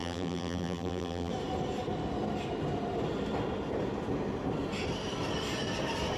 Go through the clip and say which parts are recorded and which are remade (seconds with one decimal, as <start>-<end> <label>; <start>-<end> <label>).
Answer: 0.0-1.3 remade; 1.3-6.2 recorded